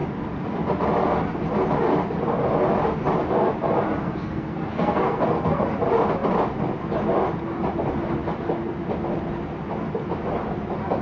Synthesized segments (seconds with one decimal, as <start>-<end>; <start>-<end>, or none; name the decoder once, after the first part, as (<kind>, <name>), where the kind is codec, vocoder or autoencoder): 4.0-5.6 (codec, SNAC)